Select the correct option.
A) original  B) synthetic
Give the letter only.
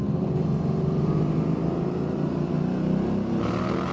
A